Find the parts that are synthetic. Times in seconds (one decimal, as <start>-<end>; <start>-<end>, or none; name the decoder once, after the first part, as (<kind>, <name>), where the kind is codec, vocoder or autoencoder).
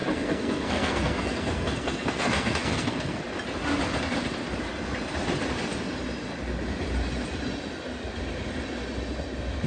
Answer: 0.0-3.2 (codec, SNAC)